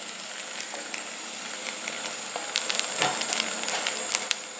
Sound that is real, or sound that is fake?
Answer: real